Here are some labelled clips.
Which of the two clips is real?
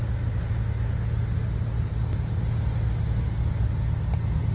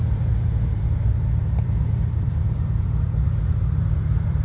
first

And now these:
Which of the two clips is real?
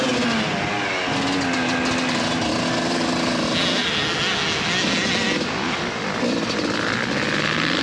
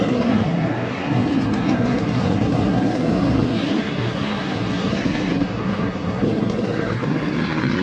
first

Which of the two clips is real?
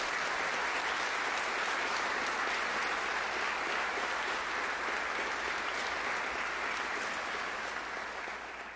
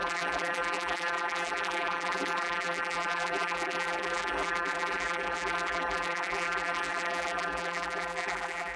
first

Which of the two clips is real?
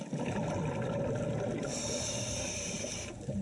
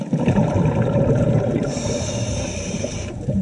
first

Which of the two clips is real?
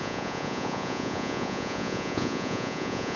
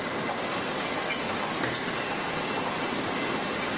second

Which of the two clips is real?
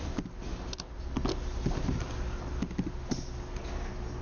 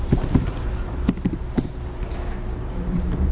first